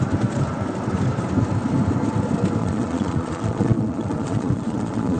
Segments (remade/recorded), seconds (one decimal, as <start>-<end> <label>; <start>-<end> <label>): 0.0-2.6 recorded; 2.6-5.2 remade